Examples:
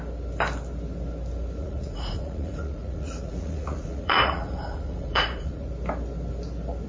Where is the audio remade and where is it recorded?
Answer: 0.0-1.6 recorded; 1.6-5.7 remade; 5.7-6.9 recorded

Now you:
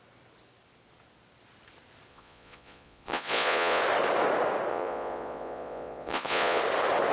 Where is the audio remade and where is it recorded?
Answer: 0.0-2.1 recorded; 2.1-3.8 remade; 3.8-4.7 recorded; 4.7-6.6 remade; 6.6-7.1 recorded